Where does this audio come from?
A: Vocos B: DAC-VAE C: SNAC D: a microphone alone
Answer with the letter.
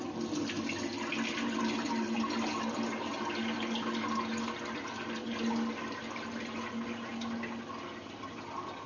D